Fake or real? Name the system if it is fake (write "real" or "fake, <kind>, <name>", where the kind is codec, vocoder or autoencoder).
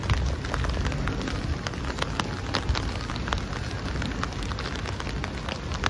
real